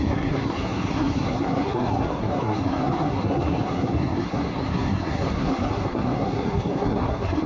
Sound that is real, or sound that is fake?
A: fake